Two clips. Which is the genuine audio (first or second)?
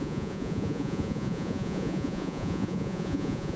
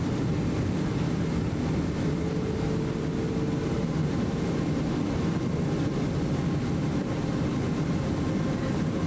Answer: second